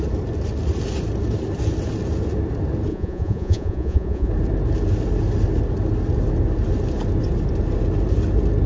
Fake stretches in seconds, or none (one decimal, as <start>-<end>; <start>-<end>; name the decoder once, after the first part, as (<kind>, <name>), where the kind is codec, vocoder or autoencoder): 2.9-4.3 (vocoder, Vocos)